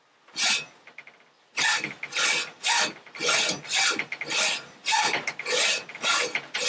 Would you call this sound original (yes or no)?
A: yes